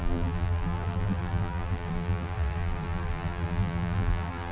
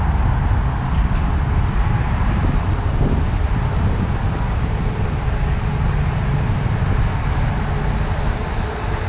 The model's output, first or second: first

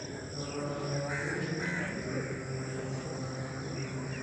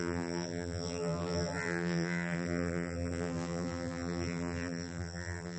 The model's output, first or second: second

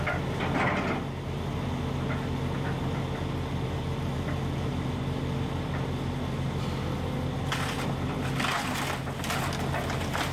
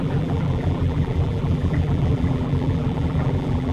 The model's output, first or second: second